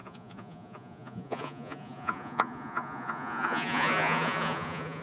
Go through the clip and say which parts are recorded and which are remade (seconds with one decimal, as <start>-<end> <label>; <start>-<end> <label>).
0.0-5.0 remade